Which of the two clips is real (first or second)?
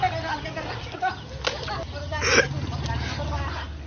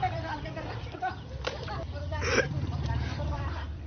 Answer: first